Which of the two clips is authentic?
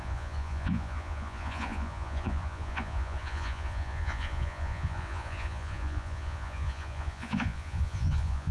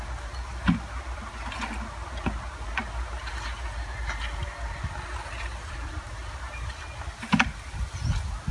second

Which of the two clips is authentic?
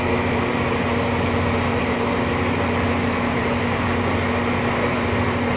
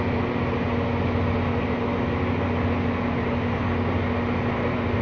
second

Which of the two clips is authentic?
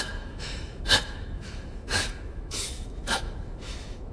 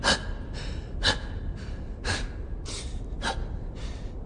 second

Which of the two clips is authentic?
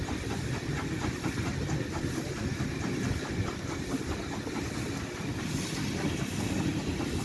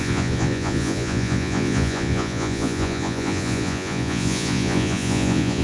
first